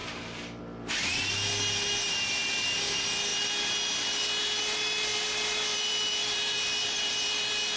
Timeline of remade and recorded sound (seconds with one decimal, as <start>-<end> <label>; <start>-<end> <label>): 0.0-0.6 remade; 0.6-5.7 recorded; 5.7-7.8 remade